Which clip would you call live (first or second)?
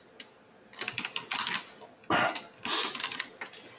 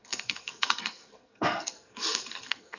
first